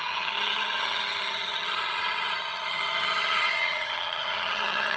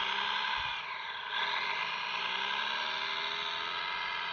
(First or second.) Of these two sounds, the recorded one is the second